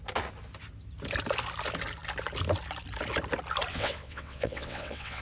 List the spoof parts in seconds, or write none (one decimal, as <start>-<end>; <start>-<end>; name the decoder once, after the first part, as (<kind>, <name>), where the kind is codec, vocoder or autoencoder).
3.7-5.2 (vocoder, WaveNeXt)